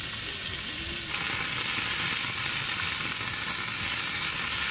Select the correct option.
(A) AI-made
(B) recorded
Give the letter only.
B